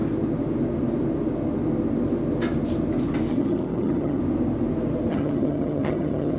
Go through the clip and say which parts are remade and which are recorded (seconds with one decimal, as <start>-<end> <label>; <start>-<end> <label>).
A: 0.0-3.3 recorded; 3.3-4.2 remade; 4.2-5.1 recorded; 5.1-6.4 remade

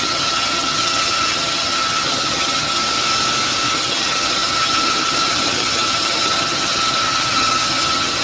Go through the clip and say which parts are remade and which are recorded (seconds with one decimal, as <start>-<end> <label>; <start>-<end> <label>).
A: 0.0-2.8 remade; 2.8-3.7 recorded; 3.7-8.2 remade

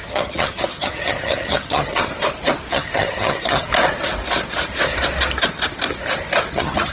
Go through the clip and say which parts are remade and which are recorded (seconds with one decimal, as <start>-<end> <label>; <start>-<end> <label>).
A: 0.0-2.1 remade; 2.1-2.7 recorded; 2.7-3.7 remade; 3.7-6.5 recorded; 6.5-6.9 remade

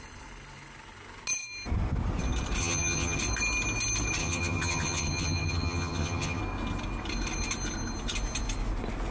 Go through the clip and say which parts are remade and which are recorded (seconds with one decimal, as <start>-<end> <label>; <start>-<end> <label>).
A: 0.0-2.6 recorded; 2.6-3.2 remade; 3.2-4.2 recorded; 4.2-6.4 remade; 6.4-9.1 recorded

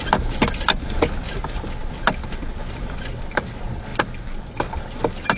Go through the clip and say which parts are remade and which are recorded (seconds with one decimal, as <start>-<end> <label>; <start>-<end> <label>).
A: 0.0-5.4 recorded